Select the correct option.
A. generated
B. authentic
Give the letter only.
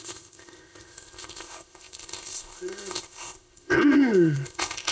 A